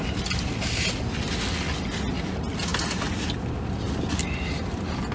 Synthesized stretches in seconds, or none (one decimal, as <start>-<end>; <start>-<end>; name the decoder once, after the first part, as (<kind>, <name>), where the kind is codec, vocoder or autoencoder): none